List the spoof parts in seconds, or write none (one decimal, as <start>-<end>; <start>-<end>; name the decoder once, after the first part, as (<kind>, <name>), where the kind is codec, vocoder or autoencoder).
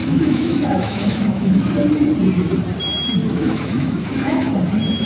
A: 0.0-1.6 (autoencoder, DAC-VAE); 3.2-4.5